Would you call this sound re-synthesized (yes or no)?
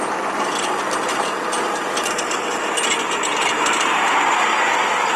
no